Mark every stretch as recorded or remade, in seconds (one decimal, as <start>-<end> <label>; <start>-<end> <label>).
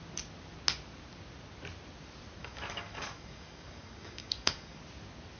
0.0-2.4 recorded; 2.4-4.8 remade; 4.8-5.4 recorded